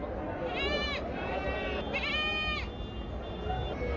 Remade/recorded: recorded